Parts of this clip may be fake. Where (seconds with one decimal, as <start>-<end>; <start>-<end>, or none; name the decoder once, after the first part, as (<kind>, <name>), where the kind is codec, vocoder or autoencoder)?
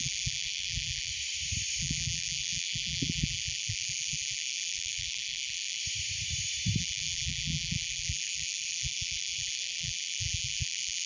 0.0-1.1 (vocoder, BigVGAN v2); 1.8-5.8; 6.8-11.1